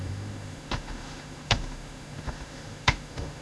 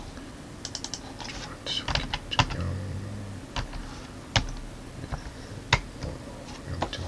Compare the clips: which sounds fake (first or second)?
first